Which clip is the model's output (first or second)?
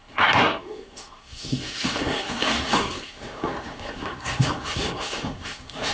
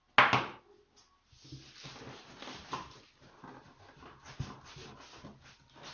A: first